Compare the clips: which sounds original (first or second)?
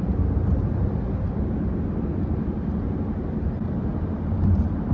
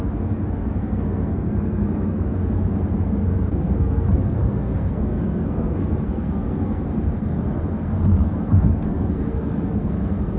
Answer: first